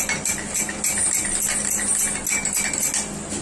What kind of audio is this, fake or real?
real